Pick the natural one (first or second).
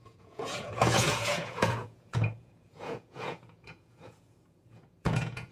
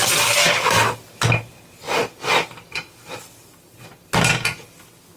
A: second